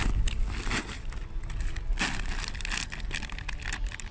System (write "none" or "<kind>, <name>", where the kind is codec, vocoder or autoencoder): none